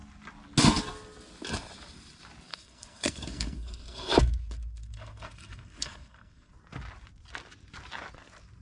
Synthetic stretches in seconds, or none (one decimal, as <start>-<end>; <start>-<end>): 2.5-6.5